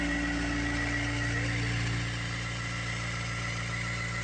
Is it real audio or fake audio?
real